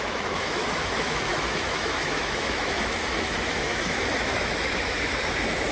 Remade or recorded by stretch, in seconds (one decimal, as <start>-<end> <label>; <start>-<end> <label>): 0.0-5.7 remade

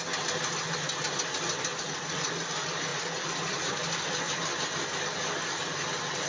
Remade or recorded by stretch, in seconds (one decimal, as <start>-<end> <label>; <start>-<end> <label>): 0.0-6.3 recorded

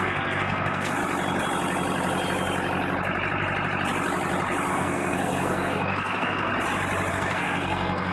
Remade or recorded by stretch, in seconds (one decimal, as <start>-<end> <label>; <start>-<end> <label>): 0.0-1.0 remade; 1.0-4.7 recorded; 4.7-6.5 remade; 6.5-7.1 recorded; 7.1-8.1 remade

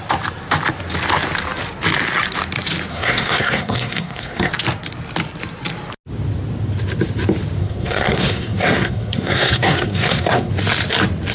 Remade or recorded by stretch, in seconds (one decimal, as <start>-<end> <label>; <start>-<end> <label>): 0.0-2.9 recorded; 2.9-4.5 remade; 4.5-7.6 recorded; 7.6-10.5 remade; 10.5-11.3 recorded

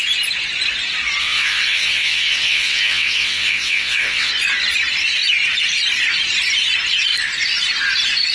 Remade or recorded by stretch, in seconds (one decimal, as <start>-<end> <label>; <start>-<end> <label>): 0.0-1.2 recorded; 1.2-4.3 remade; 4.3-8.3 recorded

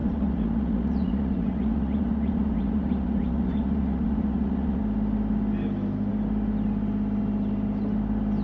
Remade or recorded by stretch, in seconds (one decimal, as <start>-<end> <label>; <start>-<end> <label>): 0.0-4.8 remade; 4.8-8.4 recorded

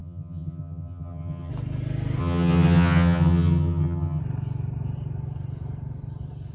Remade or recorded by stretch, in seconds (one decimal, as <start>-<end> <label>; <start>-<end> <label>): 0.0-1.5 remade; 1.5-2.2 recorded; 2.2-4.2 remade; 4.2-6.5 recorded